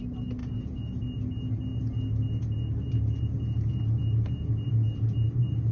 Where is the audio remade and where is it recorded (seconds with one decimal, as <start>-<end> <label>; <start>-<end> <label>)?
0.0-0.4 recorded; 0.4-1.0 remade; 1.0-5.7 recorded